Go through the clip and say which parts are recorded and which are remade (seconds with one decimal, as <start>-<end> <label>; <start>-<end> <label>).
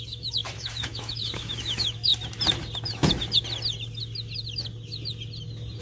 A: 0.0-2.1 remade; 2.1-5.8 recorded